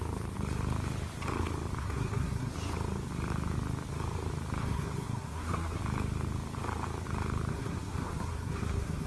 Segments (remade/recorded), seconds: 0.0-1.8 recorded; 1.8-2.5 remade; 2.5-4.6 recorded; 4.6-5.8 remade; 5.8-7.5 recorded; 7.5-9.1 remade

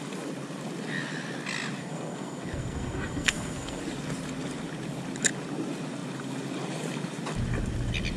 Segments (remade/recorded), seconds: 0.0-1.8 recorded; 1.8-3.8 remade; 3.8-8.2 recorded

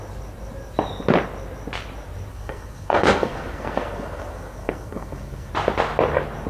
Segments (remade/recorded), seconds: 0.0-2.3 recorded; 2.3-5.5 remade; 5.5-6.5 recorded

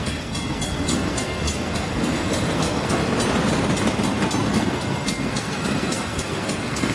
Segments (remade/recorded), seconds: 0.0-3.0 remade; 3.0-4.5 recorded; 4.5-6.9 remade

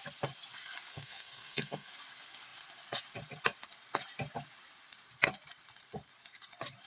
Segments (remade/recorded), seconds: 0.0-0.9 recorded; 0.9-1.9 remade; 1.9-6.9 recorded

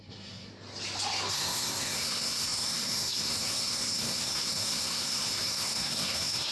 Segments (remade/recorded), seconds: 0.0-0.5 remade; 0.5-1.3 recorded; 1.3-6.5 remade